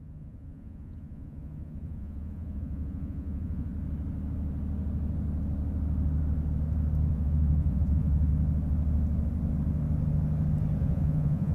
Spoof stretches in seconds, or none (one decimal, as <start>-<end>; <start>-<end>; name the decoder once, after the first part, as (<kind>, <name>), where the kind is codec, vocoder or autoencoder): 0.0-3.7 (vocoder, Vocos); 7.1-8.3; 10.8-11.5